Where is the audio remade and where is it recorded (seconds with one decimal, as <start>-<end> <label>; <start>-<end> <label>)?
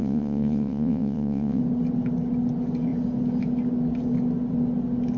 0.0-1.6 remade; 1.6-5.2 recorded